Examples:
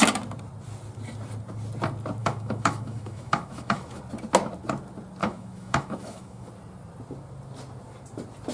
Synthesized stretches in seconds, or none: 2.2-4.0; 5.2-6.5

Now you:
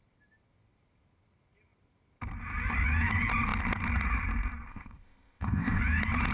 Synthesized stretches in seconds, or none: 4.7-5.8

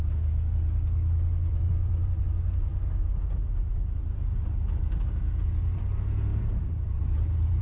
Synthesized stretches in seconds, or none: 1.5-2.2; 6.3-7.6

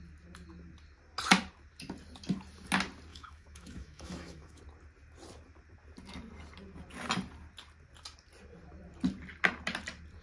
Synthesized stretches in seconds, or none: 3.1-4.6

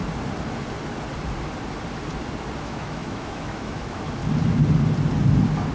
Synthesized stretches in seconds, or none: 2.6-4.2

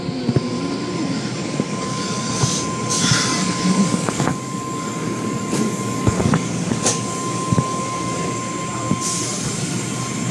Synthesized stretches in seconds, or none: 1.4-2.2; 3.3-8.4